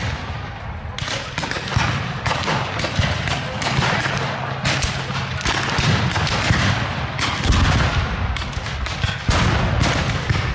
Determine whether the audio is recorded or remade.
recorded